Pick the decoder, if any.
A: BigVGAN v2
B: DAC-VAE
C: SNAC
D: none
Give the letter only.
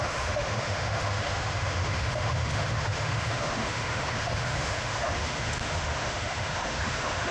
B